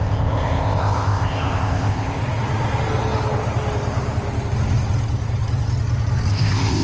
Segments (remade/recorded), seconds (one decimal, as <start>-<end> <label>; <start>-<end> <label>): 0.0-2.2 remade; 2.2-6.3 recorded; 6.3-6.8 remade